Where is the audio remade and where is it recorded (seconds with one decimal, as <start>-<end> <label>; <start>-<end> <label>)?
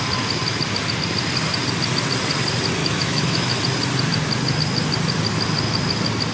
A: 0.0-2.8 recorded; 2.8-3.6 remade; 3.6-6.3 recorded